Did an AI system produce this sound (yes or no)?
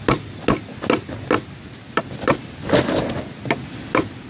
no